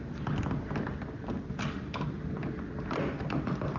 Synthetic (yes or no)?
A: no